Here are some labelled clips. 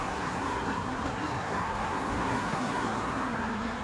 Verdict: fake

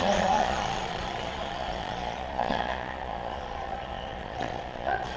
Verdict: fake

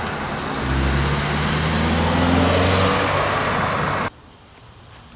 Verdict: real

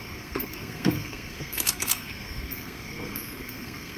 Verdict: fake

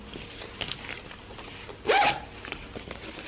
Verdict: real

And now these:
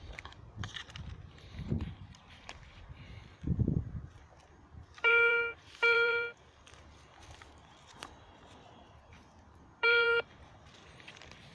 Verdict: fake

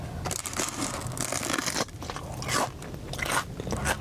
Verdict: real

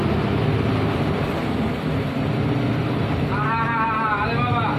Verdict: real